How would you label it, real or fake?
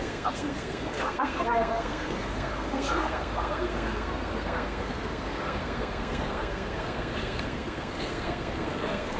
fake